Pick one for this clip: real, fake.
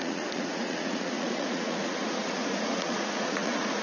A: fake